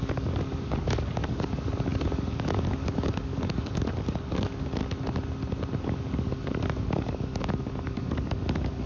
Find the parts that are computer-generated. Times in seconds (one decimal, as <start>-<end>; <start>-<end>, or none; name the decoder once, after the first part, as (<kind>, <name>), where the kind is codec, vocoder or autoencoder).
0.0-4.8 (codec, DAC); 5.8-8.9